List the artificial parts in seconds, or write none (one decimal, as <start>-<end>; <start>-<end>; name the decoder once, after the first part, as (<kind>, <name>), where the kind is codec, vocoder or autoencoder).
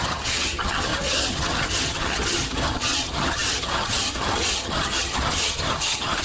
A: 0.0-6.2 (vocoder, HiFi-GAN)